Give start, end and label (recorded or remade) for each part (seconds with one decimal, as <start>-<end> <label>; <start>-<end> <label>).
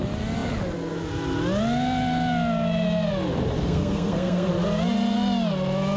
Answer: 0.0-3.6 recorded; 3.6-4.5 remade; 4.5-6.0 recorded